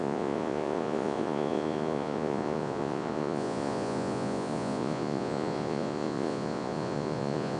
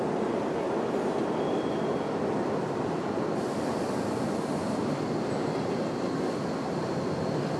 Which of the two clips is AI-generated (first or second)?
first